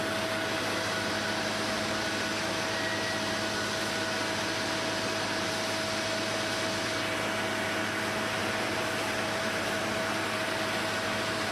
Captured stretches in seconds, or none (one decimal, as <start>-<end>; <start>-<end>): 0.0-8.4; 10.4-11.5